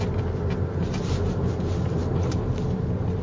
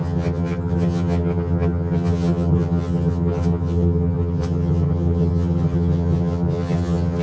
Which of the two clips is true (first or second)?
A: first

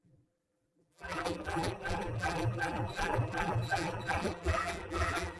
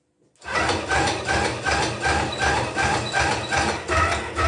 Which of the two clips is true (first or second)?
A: second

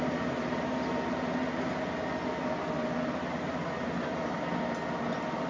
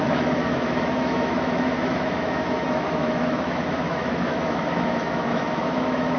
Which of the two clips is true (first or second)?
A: first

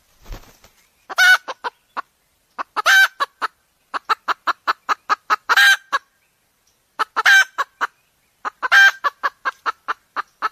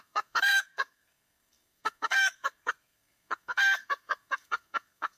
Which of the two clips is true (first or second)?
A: first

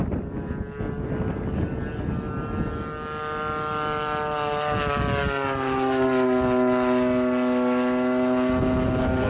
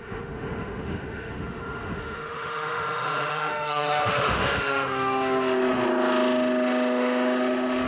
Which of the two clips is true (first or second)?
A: first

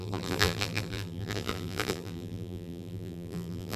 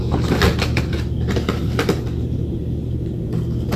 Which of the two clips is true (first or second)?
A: second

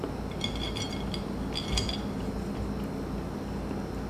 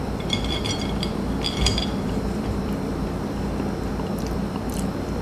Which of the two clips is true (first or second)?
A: first